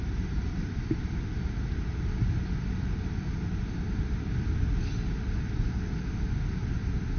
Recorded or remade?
recorded